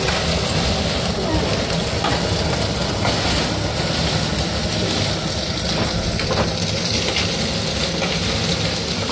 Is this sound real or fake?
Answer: real